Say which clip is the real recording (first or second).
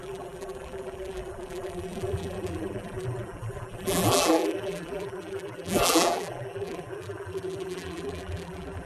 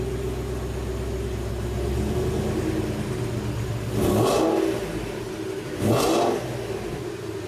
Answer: second